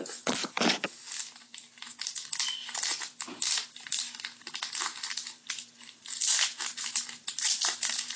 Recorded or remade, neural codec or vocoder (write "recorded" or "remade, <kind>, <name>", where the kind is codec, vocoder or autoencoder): recorded